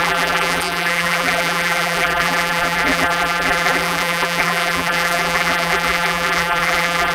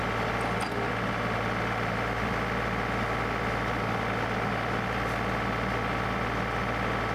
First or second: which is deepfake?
first